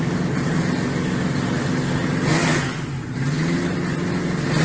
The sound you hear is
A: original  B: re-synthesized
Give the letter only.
A